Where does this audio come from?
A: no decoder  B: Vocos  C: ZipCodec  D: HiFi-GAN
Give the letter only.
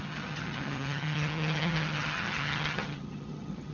D